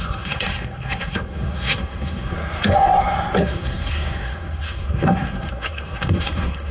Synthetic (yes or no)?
yes